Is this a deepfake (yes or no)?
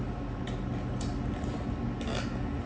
no